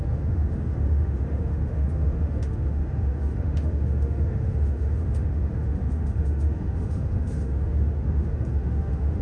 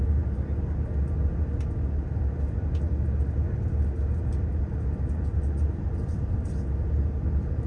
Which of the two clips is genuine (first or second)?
second